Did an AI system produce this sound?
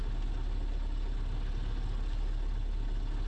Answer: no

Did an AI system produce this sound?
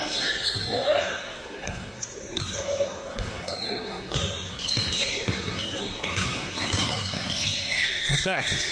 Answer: yes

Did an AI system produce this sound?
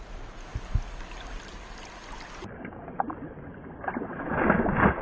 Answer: no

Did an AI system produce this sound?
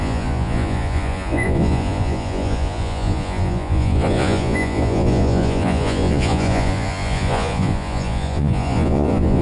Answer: yes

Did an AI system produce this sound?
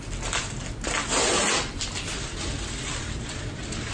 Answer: no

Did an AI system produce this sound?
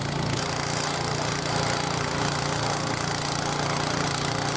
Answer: no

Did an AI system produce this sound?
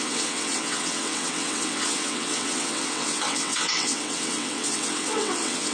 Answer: yes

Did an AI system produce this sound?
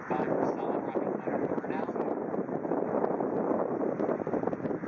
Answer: no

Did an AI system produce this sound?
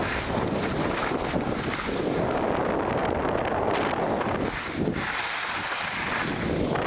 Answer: no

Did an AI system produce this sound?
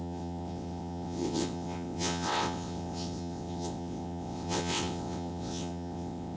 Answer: yes